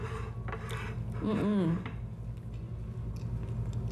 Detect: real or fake real